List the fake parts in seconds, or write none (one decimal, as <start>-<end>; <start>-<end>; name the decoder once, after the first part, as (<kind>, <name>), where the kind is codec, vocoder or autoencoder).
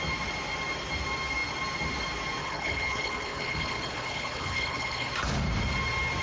2.4-5.1 (codec, HILCodec)